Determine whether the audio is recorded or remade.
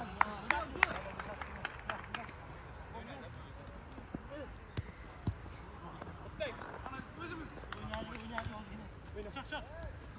recorded